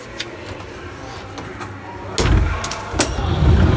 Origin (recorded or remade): recorded